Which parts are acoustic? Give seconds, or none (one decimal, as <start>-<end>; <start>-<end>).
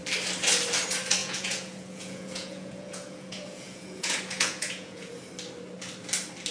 0.0-1.2; 5.1-6.5